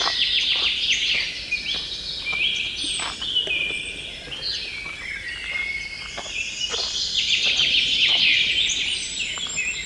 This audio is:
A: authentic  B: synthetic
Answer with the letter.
A